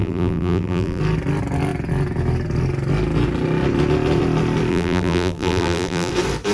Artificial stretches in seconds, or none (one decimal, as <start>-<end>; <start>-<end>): 0.0-1.0; 4.7-6.1